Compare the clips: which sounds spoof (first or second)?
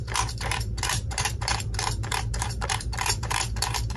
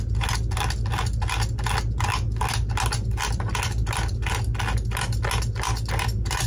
first